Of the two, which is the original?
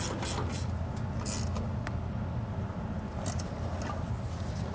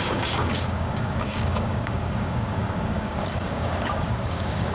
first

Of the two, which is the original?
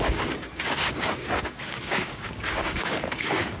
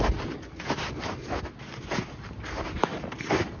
second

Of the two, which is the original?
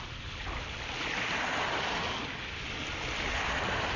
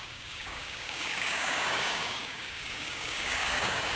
first